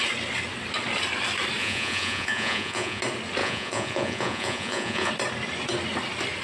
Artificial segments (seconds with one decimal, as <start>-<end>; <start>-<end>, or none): 1.6-3.0; 3.4-5.1